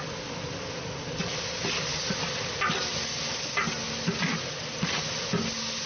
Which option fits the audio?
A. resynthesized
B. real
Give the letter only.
B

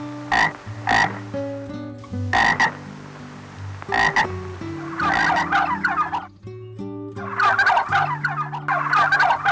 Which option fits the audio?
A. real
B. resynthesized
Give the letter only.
A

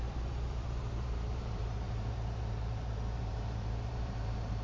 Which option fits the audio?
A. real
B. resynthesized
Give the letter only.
B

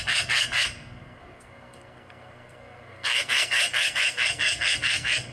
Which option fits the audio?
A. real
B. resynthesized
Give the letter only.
B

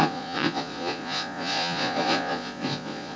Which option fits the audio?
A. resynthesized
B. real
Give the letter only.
A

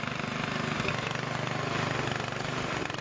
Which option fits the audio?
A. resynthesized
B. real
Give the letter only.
B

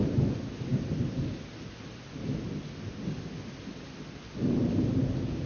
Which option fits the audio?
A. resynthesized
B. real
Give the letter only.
B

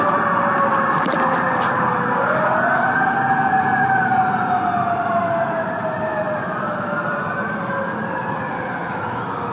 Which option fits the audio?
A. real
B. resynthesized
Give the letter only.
A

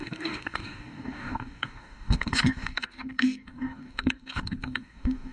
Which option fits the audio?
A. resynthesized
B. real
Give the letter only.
A